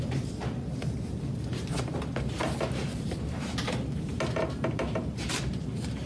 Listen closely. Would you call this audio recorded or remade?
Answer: remade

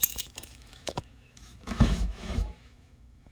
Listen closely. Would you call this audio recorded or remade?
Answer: remade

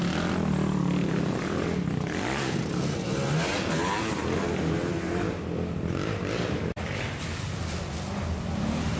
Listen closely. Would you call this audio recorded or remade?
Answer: recorded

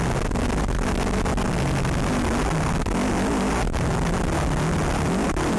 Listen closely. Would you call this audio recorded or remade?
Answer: recorded